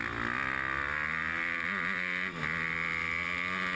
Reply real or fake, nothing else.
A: real